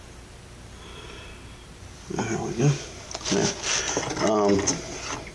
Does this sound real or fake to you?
real